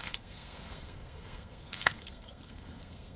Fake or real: fake